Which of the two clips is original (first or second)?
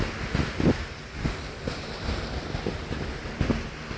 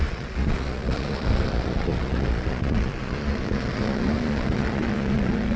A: first